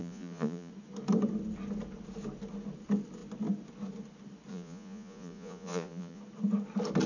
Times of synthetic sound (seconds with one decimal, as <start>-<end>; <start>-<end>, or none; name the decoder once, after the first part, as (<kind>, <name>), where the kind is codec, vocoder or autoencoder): 0.0-0.7 (vocoder, Vocos); 4.5-6.2